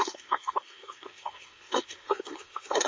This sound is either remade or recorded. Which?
remade